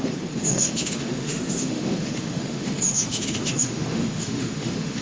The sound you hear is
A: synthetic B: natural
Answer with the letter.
A